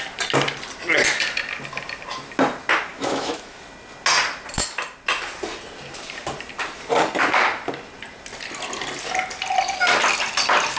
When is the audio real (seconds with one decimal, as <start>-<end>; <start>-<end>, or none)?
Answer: 0.0-2.9; 3.6-10.8